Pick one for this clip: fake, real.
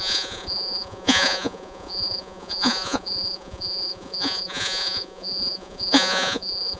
fake